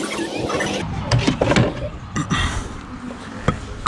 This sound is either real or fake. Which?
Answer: real